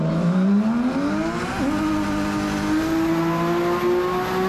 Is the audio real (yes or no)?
yes